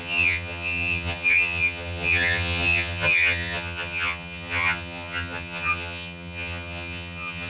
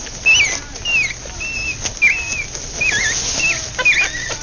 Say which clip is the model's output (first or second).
first